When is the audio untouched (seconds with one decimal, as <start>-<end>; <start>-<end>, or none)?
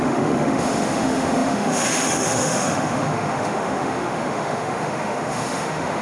none